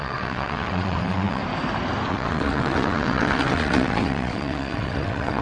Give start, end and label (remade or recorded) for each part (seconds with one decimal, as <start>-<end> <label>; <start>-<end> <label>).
0.0-1.4 remade; 1.4-2.1 recorded; 2.1-5.4 remade